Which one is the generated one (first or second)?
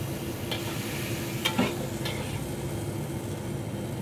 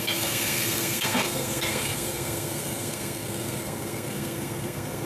second